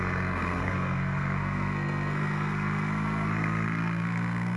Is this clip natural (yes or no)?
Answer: no